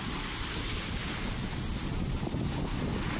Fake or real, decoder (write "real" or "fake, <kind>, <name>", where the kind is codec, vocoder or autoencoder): real